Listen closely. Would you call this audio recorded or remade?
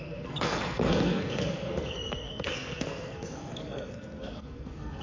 remade